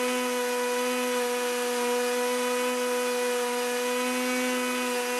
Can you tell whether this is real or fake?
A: real